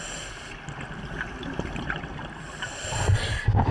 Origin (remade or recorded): recorded